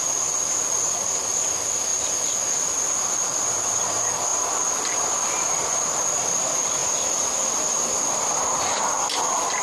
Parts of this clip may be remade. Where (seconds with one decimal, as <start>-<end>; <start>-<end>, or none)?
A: 6.8-8.0